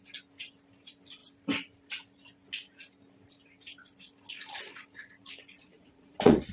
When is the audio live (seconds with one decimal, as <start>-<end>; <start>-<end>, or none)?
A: 0.0-5.6